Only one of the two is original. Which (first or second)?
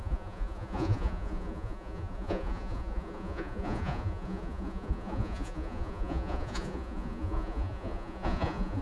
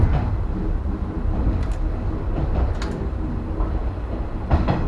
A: second